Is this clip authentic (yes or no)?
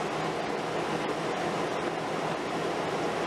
yes